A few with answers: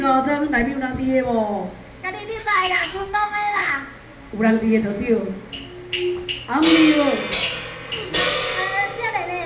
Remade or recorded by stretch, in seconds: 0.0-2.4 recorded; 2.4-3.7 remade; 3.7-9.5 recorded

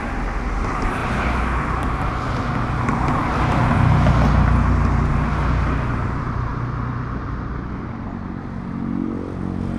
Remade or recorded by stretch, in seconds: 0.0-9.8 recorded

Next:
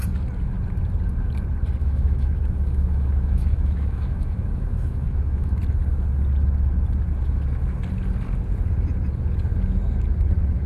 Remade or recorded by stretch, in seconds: 0.0-1.8 recorded; 1.8-5.6 remade; 5.6-10.7 recorded